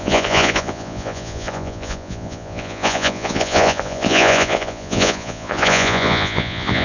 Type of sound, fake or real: fake